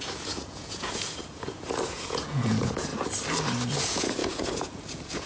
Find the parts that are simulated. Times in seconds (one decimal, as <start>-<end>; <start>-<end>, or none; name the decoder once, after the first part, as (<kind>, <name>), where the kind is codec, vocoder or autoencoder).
0.0-2.9 (vocoder, Vocos); 3.8-5.3